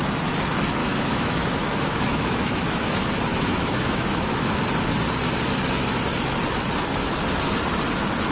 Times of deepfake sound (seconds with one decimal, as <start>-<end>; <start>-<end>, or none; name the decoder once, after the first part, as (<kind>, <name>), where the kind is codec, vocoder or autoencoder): 0.8-2.9 (autoencoder, DAC-VAE); 3.3-4.6